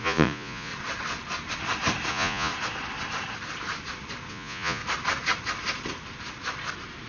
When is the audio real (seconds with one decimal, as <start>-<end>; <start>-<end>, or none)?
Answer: 0.7-2.1; 2.5-4.3; 4.8-7.1